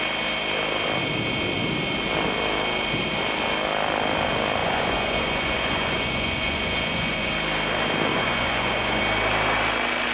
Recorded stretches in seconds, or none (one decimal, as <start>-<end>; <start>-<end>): 0.0-4.6; 7.3-8.1; 9.0-10.1